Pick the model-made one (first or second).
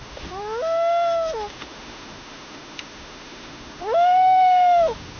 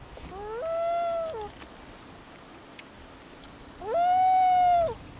first